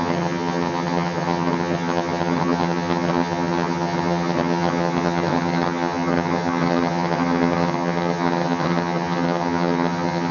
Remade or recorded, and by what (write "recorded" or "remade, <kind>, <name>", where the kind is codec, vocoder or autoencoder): remade, vocoder, HiFi-GAN